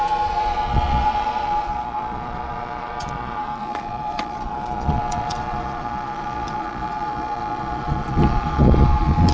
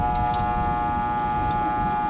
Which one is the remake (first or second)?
first